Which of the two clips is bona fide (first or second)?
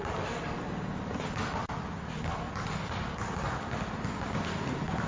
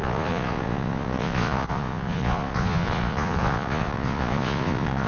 first